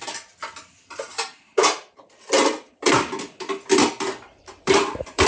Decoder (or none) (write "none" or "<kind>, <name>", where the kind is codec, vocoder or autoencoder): vocoder, BigVGAN v2